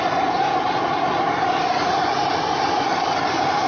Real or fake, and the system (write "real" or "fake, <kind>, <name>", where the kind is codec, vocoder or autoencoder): real